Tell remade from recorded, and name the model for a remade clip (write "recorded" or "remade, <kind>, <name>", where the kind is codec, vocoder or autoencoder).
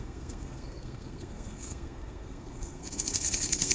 remade, codec, SNAC